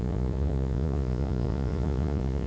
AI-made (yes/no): yes